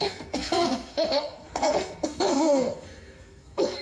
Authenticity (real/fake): fake